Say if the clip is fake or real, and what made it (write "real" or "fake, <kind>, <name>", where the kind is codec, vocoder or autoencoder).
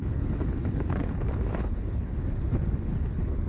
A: fake, codec, HILCodec